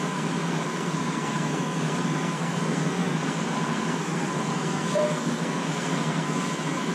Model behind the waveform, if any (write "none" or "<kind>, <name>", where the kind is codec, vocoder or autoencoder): codec, SNAC